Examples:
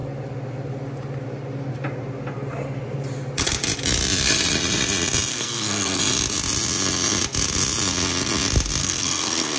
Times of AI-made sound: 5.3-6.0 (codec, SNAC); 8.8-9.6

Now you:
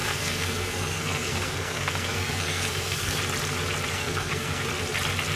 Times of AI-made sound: 0.0-3.2 (codec, SNAC); 3.9-4.7

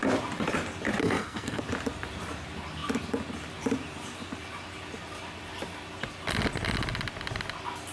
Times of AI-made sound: 1.0-1.6 (codec, SNAC)

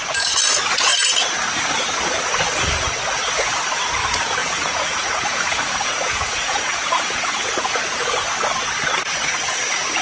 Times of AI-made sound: 4.4-7.8 (vocoder, Vocos)

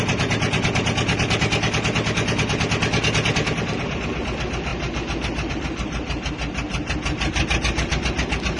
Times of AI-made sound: none

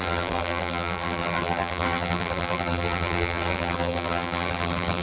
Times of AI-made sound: 0.0-5.0 (vocoder, BigVGAN v2)

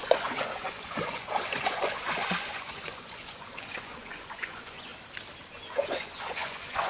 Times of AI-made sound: 0.0-4.9 (vocoder, Vocos); 5.5-6.9